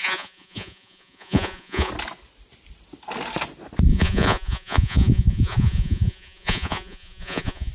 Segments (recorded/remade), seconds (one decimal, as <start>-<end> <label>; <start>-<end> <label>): 0.0-1.9 remade; 1.9-3.9 recorded; 3.9-7.7 remade